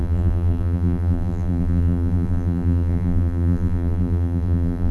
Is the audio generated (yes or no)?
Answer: yes